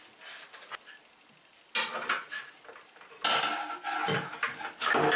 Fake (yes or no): no